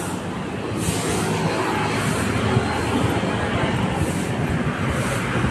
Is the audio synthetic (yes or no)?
no